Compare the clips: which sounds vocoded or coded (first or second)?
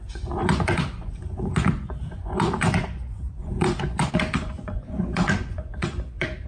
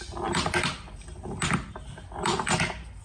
first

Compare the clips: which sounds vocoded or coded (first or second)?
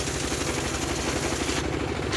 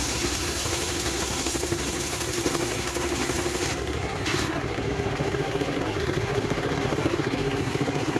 second